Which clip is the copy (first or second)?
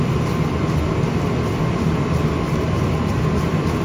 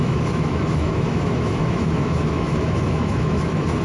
second